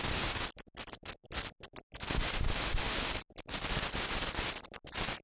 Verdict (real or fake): real